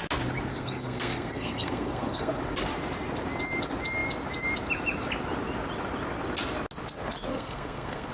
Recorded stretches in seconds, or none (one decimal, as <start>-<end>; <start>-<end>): 0.0-0.5; 2.3-7.3